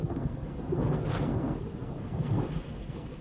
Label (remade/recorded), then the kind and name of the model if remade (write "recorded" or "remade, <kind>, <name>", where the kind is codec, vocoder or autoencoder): remade, codec, SNAC